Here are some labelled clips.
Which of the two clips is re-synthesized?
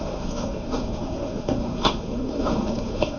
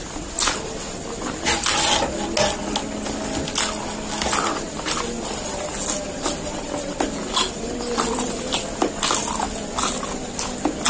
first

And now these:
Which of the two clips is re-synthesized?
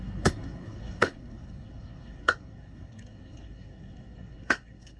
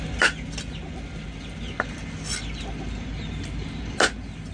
first